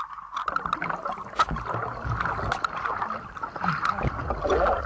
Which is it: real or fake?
real